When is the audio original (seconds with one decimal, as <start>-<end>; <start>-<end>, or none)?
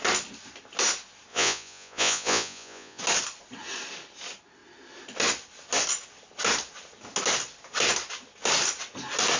0.0-1.3; 3.0-9.4